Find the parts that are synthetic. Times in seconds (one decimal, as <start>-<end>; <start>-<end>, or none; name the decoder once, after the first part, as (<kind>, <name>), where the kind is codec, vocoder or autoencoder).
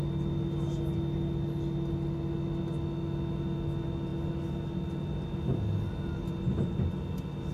none